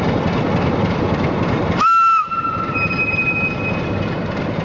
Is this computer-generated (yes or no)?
no